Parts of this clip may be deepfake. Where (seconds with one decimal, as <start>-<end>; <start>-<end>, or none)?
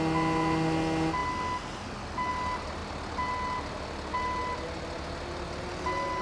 none